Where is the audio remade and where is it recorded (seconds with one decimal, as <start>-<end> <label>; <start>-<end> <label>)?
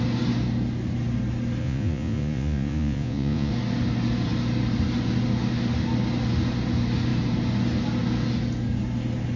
0.0-1.6 recorded; 1.6-3.5 remade; 3.5-9.4 recorded